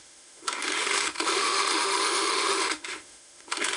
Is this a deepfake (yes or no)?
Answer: yes